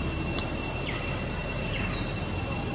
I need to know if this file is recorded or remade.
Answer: recorded